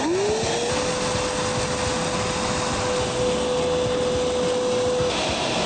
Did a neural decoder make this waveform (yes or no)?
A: no